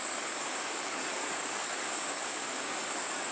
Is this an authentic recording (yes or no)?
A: no